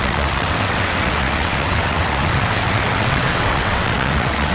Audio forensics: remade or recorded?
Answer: remade